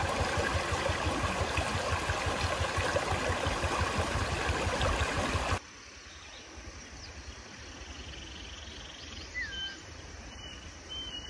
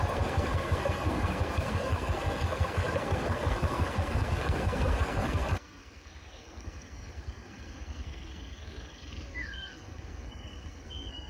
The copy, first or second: second